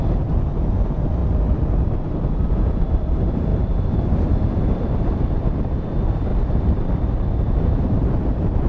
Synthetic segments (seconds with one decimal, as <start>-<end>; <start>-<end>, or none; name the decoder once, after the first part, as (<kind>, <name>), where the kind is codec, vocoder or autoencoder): 0.0-1.2 (vocoder, BigVGAN v2); 1.9-6.3; 7.1-8.7